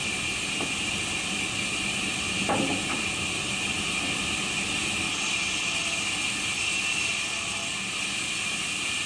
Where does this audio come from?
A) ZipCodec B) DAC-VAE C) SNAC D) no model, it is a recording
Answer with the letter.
D